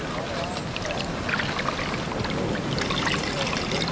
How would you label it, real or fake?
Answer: real